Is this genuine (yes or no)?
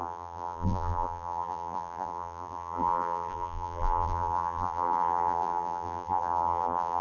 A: no